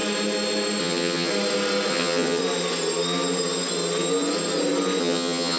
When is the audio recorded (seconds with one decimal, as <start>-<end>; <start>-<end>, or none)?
0.0-0.8; 1.3-1.9; 2.4-5.0